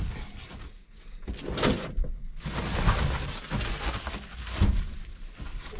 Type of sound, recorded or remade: recorded